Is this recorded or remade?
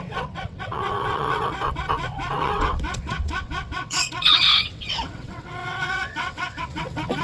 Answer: remade